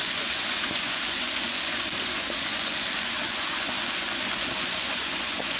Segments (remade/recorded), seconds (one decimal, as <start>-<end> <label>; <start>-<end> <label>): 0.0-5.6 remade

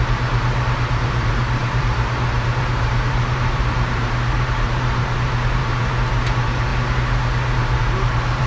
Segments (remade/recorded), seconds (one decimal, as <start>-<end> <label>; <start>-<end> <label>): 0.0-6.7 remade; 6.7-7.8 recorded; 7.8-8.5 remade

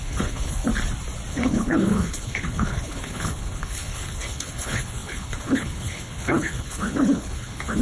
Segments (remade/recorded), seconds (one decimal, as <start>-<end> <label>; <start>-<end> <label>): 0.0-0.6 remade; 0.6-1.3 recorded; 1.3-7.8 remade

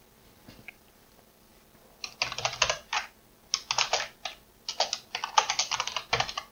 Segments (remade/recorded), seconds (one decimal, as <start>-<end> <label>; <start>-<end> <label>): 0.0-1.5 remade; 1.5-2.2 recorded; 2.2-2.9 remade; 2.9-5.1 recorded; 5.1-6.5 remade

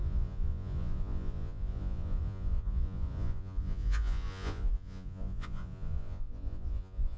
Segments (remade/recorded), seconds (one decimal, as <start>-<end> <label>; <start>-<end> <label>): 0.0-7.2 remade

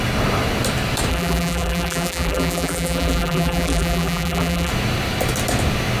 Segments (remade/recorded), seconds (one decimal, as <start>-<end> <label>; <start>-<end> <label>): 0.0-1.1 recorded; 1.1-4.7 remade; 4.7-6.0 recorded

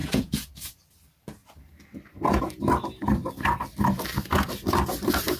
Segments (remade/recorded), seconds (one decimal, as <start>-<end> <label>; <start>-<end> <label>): 0.0-0.5 remade; 0.5-5.4 recorded